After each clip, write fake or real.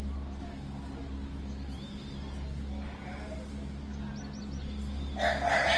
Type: real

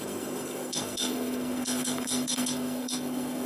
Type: fake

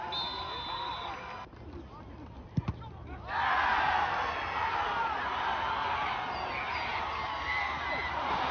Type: real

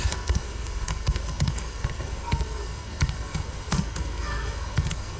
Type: fake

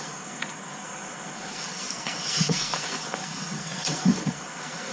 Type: fake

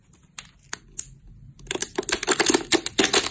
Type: real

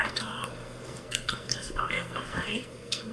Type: fake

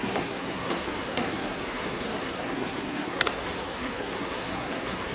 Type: fake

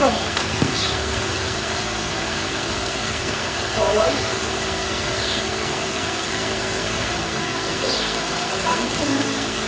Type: fake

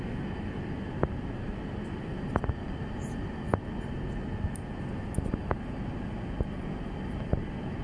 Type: real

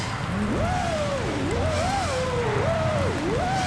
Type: real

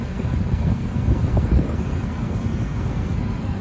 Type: fake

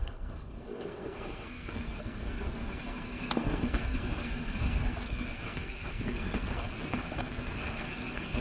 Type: fake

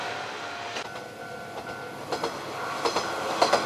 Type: real